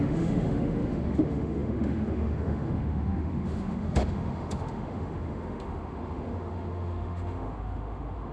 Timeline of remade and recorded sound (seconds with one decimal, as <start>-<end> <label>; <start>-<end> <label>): 0.0-8.3 remade